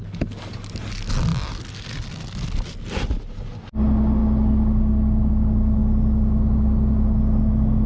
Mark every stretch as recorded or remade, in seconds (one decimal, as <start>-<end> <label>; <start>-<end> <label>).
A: 0.0-7.9 recorded

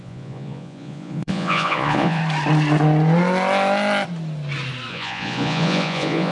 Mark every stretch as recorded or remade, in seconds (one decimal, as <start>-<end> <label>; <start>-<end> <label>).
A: 0.0-2.2 remade; 2.2-4.9 recorded; 4.9-6.3 remade

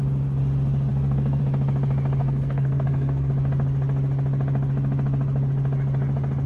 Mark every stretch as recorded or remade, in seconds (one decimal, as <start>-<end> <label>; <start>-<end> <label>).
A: 0.0-0.9 recorded; 0.9-1.4 remade; 1.4-2.2 recorded; 2.2-3.3 remade; 3.3-6.5 recorded

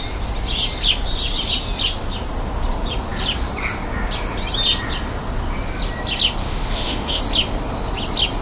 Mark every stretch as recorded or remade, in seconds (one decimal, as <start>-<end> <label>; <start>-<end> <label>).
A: 0.0-6.4 recorded; 6.4-7.2 remade; 7.2-8.4 recorded

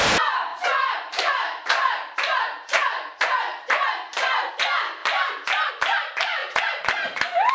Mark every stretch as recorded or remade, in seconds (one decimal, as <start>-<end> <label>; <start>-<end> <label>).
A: 0.0-6.4 recorded; 6.4-7.5 remade

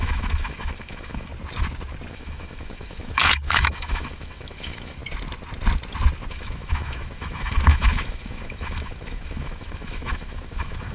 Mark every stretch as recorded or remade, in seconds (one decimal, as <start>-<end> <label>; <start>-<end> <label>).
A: 0.0-1.3 remade; 1.3-2.1 recorded; 2.1-5.0 remade; 5.0-6.3 recorded; 6.3-10.9 remade

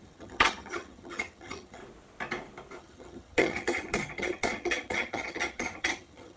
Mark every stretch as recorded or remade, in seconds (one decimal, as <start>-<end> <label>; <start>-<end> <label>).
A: 0.0-1.8 remade; 1.8-2.8 recorded; 2.8-6.4 remade

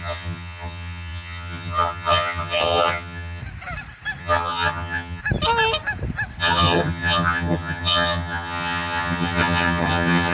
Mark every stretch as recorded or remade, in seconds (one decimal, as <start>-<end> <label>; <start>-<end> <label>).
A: 0.0-3.4 remade; 3.4-4.2 recorded; 4.2-5.2 remade; 5.2-6.4 recorded; 6.4-10.3 remade